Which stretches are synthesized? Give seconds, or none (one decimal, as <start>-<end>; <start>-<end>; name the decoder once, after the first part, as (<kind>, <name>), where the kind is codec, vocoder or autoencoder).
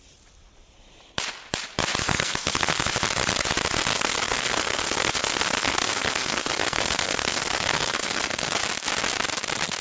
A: 2.0-2.9 (codec, SNAC); 3.9-8.6